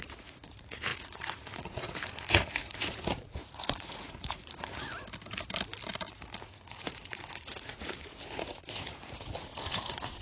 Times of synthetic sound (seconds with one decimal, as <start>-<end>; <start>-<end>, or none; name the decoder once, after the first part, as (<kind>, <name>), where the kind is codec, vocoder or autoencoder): 0.0-4.9 (vocoder, Vocos); 6.4-10.2